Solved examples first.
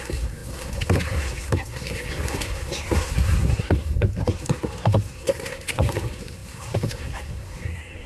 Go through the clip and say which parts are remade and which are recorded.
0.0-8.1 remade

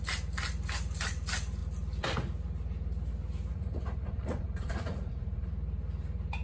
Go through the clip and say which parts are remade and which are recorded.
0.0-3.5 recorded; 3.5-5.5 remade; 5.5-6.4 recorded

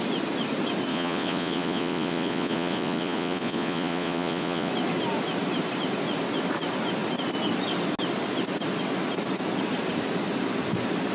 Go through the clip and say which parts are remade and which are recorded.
0.0-0.9 recorded; 0.9-4.7 remade; 4.7-11.1 recorded

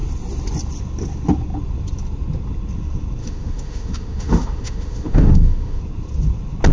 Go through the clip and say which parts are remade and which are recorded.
0.0-3.2 recorded; 3.2-5.8 remade; 5.8-6.7 recorded

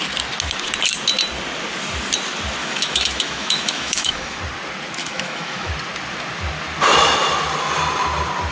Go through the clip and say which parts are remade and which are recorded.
0.0-2.6 recorded; 2.6-4.4 remade; 4.4-5.0 recorded; 5.0-5.7 remade; 5.7-8.5 recorded

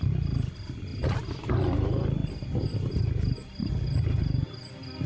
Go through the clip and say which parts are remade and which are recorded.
0.0-2.2 remade; 2.2-3.7 recorded; 3.7-5.1 remade

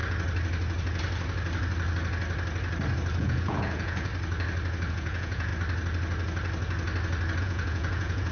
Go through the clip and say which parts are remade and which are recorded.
0.0-3.2 recorded; 3.2-4.1 remade; 4.1-4.9 recorded; 4.9-5.5 remade; 5.5-7.4 recorded; 7.4-8.3 remade